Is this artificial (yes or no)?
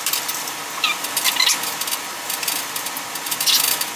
no